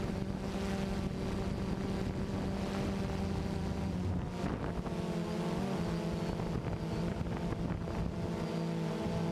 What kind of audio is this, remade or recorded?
recorded